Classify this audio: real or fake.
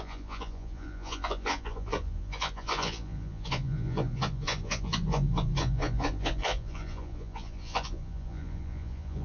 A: fake